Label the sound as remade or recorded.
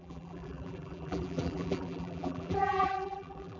remade